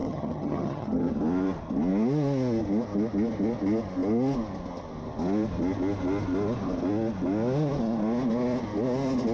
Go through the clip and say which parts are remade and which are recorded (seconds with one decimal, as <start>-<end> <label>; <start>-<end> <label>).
0.0-1.1 remade; 1.1-9.3 recorded